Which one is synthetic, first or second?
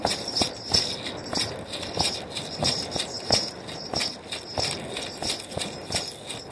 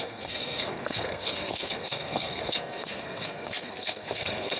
second